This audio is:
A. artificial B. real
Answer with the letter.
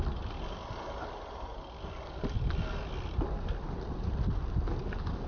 B